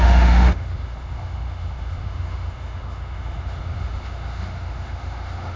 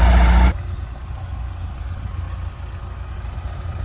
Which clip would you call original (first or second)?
second